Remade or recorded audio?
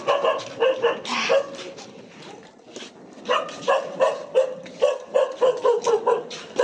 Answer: recorded